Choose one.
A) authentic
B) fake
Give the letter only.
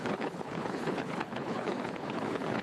B